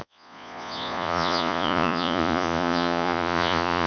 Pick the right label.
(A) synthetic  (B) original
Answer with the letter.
A